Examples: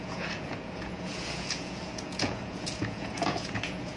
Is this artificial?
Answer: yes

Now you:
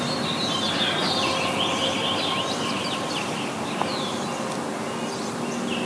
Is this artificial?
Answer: no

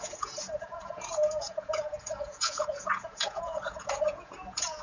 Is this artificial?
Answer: yes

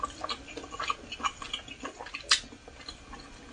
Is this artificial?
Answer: no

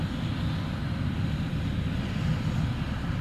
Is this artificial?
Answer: no